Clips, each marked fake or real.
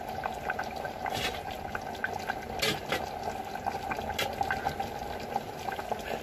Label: real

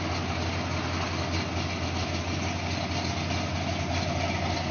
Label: real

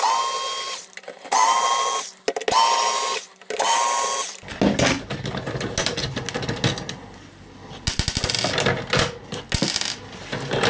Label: real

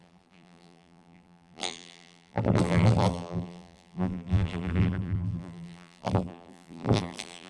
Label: fake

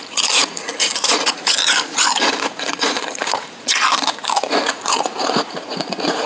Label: fake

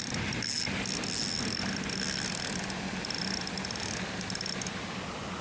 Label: real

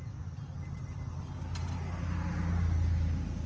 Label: real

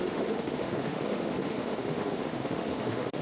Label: fake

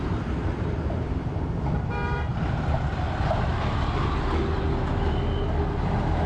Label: real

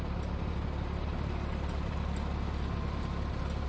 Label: real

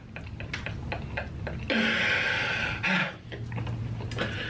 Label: real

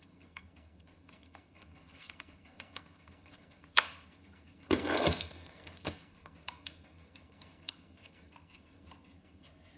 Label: fake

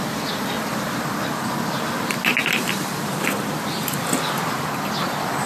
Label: real